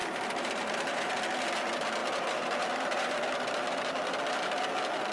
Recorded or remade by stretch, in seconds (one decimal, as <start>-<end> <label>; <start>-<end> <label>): 0.0-1.1 remade; 1.1-2.0 recorded; 2.0-3.2 remade; 3.2-5.1 recorded